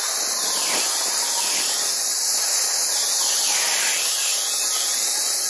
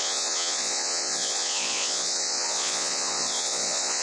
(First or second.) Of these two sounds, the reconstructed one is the second